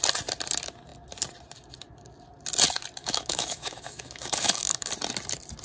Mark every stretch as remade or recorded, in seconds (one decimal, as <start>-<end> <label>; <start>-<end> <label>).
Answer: 0.0-3.0 recorded; 3.0-4.9 remade; 4.9-5.6 recorded